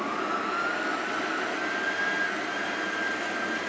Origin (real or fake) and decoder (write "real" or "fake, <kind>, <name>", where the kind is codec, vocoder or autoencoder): real